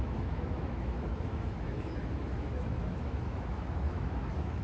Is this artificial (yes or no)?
yes